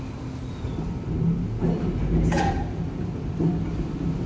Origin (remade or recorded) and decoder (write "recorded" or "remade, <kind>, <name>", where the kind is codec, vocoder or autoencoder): recorded